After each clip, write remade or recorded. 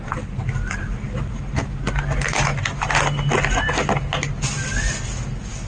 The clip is recorded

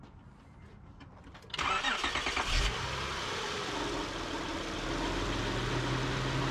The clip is recorded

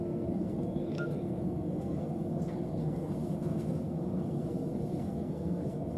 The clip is remade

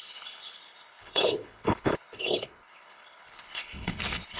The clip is remade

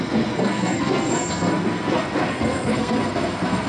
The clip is remade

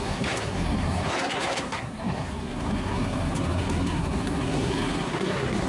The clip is remade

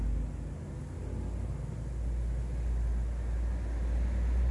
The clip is recorded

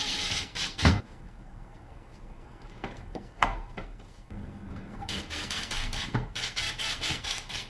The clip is remade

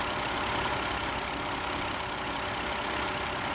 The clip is recorded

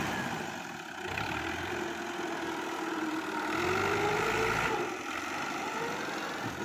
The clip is remade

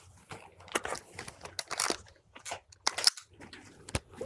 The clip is recorded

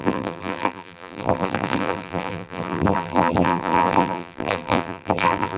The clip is remade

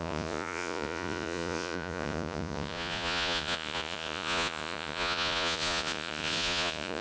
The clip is remade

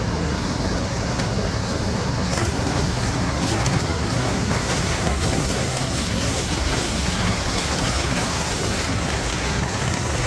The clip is remade